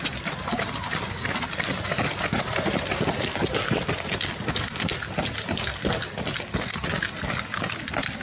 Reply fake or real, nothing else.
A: real